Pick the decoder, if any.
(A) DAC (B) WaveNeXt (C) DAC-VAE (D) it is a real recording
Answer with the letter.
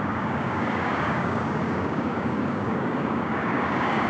A